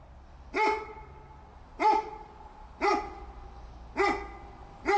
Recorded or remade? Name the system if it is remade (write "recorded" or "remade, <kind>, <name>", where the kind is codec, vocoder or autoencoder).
recorded